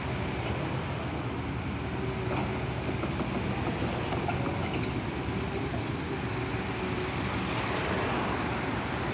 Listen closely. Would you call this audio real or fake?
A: real